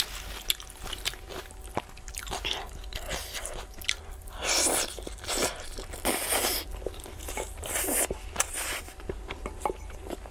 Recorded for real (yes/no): no